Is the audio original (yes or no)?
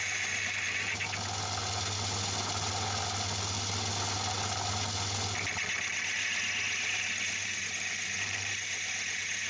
yes